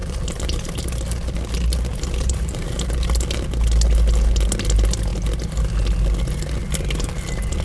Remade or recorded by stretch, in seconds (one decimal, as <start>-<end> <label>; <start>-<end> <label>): 0.0-0.7 remade; 0.7-1.9 recorded; 1.9-2.7 remade; 2.7-7.6 recorded